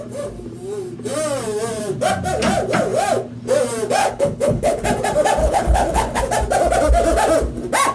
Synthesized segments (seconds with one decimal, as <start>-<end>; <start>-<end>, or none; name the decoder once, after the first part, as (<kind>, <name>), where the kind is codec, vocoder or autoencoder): 4.0-4.8 (codec, HILCodec); 5.4-6.2